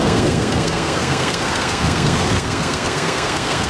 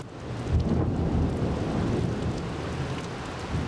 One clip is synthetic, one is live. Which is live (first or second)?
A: second